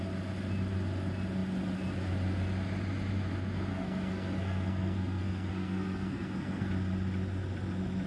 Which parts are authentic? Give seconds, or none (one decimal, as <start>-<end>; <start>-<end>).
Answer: 0.0-3.7; 6.7-8.1